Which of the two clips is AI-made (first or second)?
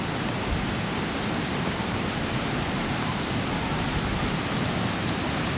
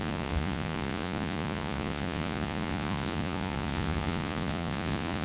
second